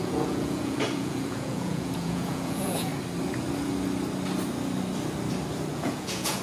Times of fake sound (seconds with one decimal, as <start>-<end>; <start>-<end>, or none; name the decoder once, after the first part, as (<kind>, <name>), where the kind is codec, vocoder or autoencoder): 0.0-2.9 (vocoder, Vocos); 5.7-6.4